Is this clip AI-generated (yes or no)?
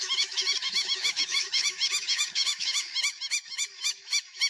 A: yes